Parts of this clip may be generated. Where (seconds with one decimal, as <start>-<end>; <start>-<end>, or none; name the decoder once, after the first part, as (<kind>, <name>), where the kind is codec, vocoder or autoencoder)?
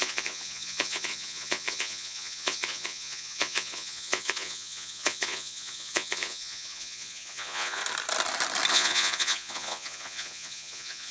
0.0-7.8 (vocoder, Vocos); 8.7-11.1